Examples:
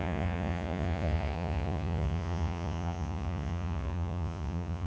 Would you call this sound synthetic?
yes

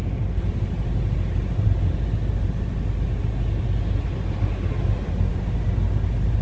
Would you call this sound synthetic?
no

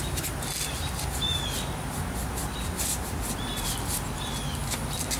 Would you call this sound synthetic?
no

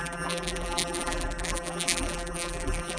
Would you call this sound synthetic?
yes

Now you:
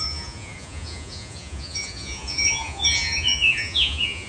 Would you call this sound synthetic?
yes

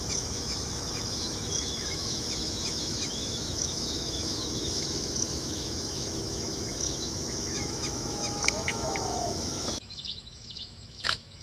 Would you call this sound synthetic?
yes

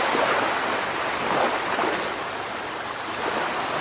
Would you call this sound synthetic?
no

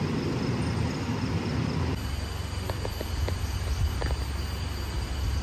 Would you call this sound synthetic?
no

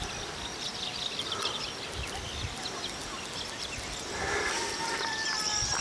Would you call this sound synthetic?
no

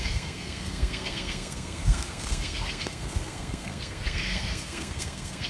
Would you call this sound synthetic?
yes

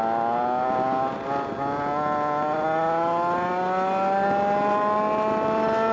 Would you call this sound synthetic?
no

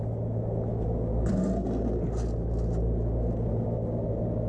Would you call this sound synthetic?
no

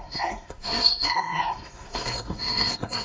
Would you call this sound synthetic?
yes